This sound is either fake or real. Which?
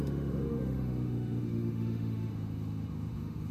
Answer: fake